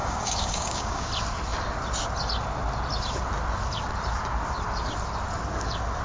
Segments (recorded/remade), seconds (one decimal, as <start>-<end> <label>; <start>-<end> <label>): 0.0-1.1 remade; 1.1-6.0 recorded